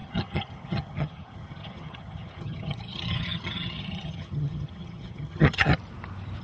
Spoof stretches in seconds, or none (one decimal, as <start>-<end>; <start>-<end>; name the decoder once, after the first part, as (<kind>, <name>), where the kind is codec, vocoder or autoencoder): 0.0-5.7 (vocoder, HiFi-GAN)